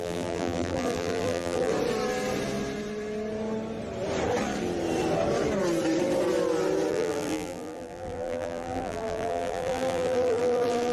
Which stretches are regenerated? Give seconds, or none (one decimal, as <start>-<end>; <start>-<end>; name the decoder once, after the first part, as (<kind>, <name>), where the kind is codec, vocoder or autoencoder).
0.0-1.7 (vocoder, BigVGAN v2); 6.9-10.9